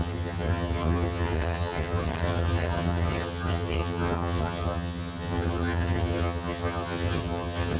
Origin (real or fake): fake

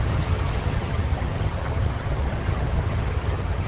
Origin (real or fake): fake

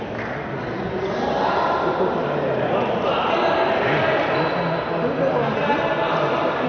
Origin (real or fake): real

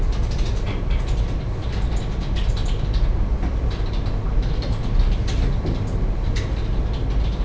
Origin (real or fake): real